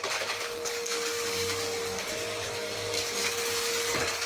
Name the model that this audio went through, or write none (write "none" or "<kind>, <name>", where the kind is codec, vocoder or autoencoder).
codec, DAC